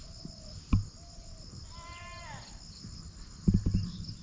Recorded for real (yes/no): yes